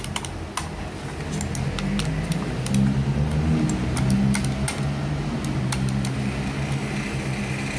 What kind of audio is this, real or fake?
real